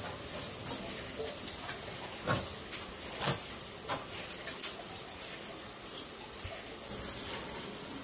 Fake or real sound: real